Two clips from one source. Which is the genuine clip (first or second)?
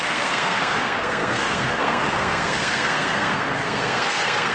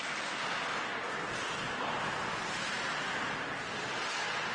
second